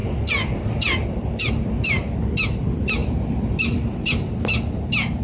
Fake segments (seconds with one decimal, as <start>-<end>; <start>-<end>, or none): 0.0-1.5; 3.0-5.2

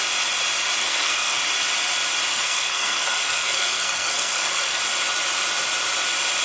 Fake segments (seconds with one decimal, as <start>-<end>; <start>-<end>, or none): 0.8-1.4; 2.3-4.8

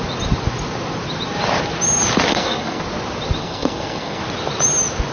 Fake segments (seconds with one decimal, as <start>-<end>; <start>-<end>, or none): 2.3-2.8; 3.4-4.2